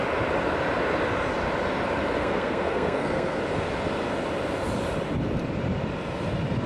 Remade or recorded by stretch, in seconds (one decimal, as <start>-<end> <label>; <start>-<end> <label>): 0.0-2.2 recorded; 2.2-3.4 remade; 3.4-6.7 recorded